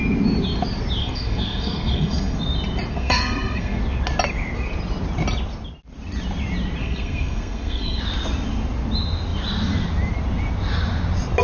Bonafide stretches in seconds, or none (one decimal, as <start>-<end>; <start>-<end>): 0.0-1.0; 2.4-2.9; 3.8-6.8; 8.0-11.4